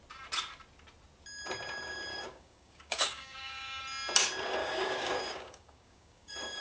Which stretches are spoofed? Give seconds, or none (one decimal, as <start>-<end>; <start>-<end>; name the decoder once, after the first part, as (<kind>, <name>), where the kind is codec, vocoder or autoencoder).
2.1-3.8 (codec, DAC); 4.6-6.6

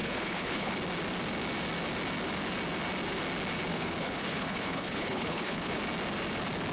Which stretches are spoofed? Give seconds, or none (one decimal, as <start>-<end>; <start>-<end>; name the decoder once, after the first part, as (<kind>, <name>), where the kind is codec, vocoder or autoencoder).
0.0-0.7 (codec, HILCodec); 3.7-5.8

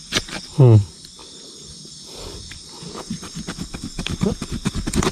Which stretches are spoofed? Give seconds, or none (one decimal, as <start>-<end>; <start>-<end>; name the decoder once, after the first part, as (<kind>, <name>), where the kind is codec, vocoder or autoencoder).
none

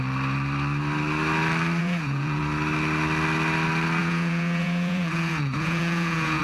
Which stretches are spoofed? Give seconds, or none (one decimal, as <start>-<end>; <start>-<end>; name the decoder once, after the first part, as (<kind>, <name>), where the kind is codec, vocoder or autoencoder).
1.8-2.4 (vocoder, Vocos); 4.0-6.4

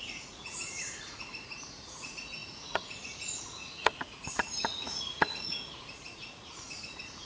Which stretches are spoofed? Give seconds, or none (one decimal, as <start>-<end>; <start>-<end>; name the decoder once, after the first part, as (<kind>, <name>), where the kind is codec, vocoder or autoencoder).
0.0-7.3 (vocoder, Vocos)

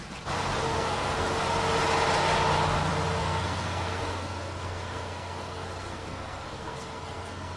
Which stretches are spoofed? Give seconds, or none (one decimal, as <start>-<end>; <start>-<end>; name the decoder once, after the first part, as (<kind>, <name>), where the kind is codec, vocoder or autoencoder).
0.7-1.4 (codec, SNAC); 3.2-7.6